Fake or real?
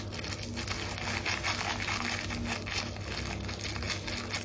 real